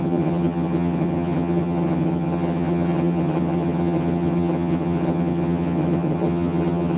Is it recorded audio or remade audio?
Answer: remade